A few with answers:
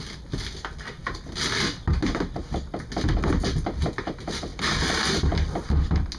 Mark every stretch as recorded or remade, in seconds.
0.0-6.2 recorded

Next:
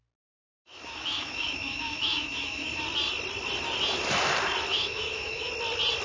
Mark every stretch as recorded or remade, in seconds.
0.0-0.5 recorded; 0.5-2.8 remade; 2.8-4.7 recorded; 4.7-5.5 remade; 5.5-6.0 recorded

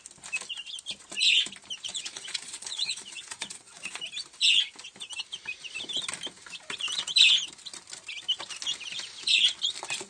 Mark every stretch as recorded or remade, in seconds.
0.0-1.9 recorded; 1.9-4.0 remade; 4.0-10.1 recorded

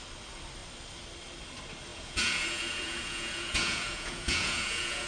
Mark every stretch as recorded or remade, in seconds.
0.0-1.9 recorded; 1.9-5.1 remade

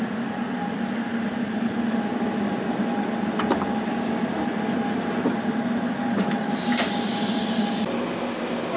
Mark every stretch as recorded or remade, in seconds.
0.0-8.8 recorded

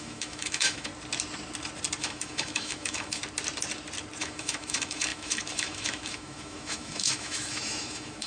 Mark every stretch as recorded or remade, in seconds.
0.0-0.9 remade; 0.9-2.0 recorded; 2.0-3.2 remade; 3.2-4.2 recorded; 4.2-8.3 remade

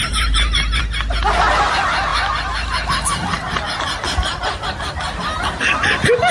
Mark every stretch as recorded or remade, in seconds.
0.0-0.8 remade; 0.8-6.3 recorded